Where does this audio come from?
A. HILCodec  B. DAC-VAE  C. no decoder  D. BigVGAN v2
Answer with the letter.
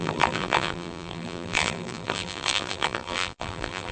D